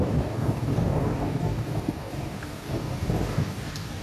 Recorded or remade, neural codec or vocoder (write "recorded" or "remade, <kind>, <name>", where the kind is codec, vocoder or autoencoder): remade, codec, DAC